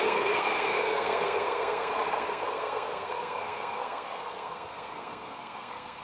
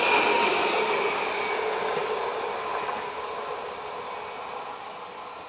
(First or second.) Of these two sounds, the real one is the second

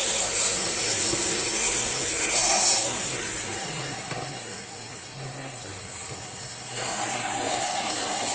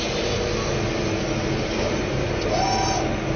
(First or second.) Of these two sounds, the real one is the second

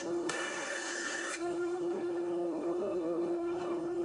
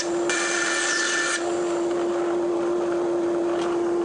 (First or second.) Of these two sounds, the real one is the second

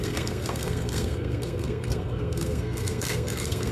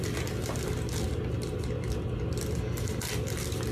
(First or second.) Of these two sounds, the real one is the second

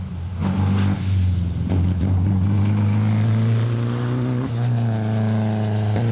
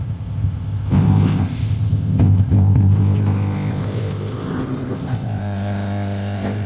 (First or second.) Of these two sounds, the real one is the first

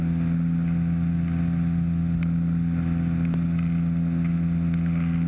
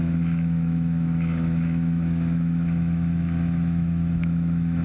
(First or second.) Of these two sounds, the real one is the first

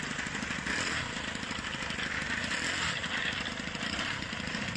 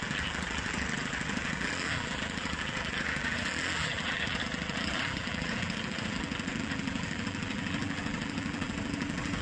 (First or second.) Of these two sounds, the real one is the first